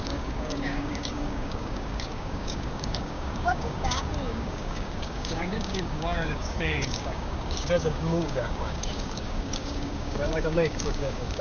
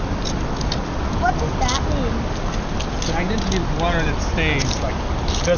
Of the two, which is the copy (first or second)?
first